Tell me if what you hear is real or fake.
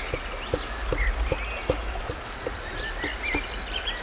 real